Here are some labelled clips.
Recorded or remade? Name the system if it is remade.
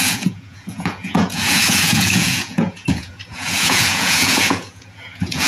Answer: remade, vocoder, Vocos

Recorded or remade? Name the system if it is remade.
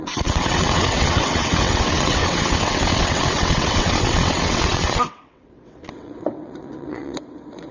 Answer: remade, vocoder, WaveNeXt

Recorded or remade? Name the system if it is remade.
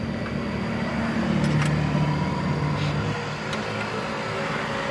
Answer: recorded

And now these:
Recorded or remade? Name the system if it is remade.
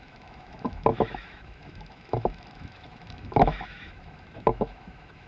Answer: remade, autoencoder, DAC-VAE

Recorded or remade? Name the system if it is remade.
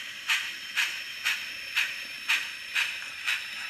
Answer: remade, vocoder, BigVGAN v2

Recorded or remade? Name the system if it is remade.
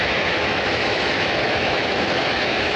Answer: remade, autoencoder, DAC-VAE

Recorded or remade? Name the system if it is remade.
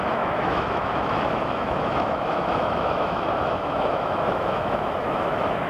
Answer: remade, autoencoder, DAC-VAE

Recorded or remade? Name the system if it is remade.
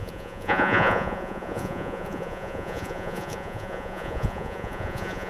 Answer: remade, vocoder, Vocos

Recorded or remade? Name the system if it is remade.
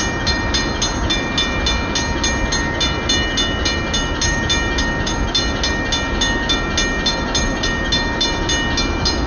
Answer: recorded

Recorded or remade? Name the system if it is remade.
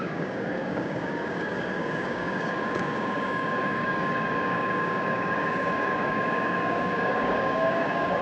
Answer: remade, codec, DAC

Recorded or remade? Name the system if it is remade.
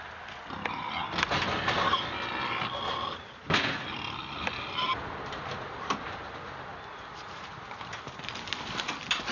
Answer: recorded